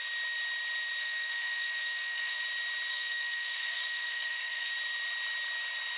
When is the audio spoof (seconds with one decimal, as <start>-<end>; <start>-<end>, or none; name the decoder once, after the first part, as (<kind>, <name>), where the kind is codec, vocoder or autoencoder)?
1.0-2.4 (codec, SNAC); 2.9-4.7